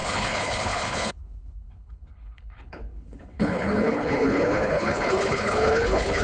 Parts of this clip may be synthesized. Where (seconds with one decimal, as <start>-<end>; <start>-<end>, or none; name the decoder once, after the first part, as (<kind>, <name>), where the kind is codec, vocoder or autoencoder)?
0.0-6.2 (codec, HILCodec)